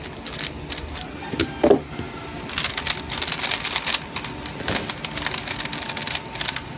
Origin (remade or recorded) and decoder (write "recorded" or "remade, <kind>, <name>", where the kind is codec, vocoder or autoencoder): recorded